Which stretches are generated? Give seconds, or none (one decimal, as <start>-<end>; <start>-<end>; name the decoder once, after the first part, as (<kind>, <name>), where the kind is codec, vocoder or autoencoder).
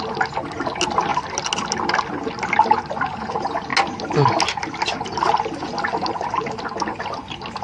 none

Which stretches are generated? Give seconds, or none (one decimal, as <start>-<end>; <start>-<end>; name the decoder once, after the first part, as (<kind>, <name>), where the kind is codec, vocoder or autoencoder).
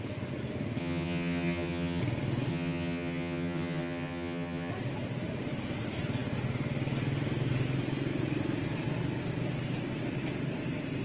0.8-2.0 (vocoder, HiFi-GAN); 2.5-4.7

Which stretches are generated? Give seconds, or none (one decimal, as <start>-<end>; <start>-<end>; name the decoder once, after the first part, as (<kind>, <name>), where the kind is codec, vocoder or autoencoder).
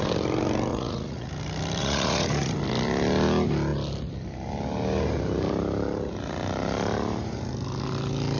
0.7-1.3 (vocoder, Vocos); 1.8-2.5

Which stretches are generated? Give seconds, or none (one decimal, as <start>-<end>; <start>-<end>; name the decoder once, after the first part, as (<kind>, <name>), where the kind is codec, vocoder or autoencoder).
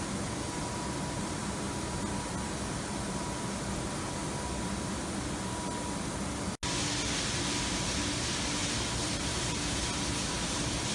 8.6-9.4 (vocoder, BigVGAN v2)